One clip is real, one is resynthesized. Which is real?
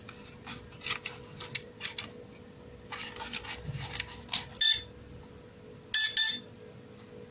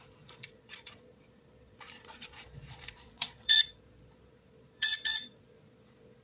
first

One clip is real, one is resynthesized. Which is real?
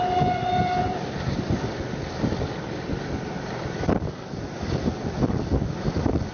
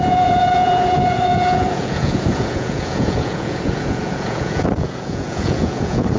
first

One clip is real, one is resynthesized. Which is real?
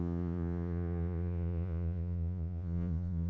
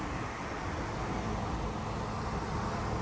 second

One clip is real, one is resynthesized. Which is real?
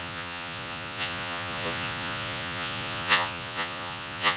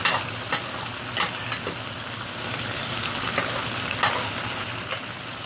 second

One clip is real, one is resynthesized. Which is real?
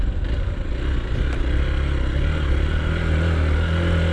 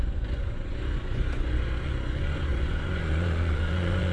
first